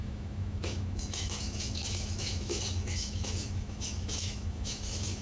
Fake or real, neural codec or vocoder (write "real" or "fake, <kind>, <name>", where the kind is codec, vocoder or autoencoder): fake, autoencoder, DAC-VAE